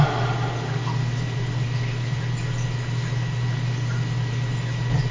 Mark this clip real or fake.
real